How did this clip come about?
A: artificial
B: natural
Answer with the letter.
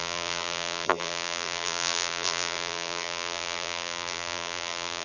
A